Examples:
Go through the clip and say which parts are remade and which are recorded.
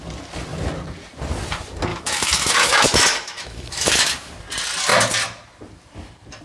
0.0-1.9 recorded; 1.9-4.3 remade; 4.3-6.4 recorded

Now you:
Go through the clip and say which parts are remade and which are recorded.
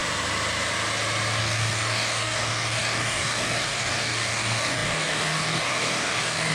0.0-1.4 recorded; 1.4-6.5 remade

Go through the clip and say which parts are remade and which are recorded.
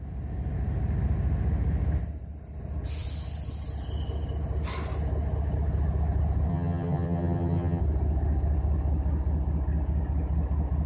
0.0-6.5 recorded; 6.5-7.8 remade; 7.8-10.9 recorded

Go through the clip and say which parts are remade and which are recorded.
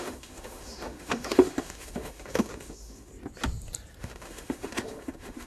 0.0-3.1 remade; 3.1-4.0 recorded; 4.0-5.5 remade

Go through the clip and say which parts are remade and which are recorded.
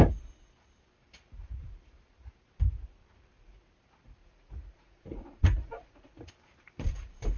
0.0-4.2 recorded; 4.2-6.3 remade; 6.3-7.4 recorded